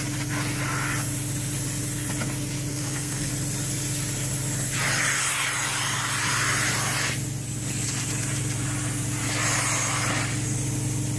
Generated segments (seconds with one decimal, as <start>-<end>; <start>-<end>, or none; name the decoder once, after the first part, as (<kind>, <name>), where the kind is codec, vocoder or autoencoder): 2.7-3.3 (codec, SNAC)